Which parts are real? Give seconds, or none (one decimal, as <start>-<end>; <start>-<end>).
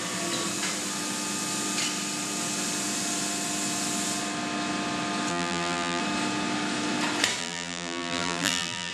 0.0-5.3; 6.0-7.4